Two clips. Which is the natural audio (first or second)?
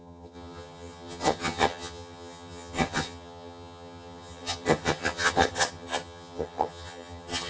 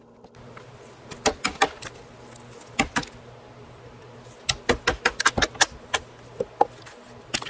second